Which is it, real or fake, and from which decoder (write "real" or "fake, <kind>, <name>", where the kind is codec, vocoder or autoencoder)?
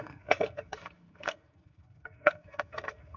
fake, codec, SNAC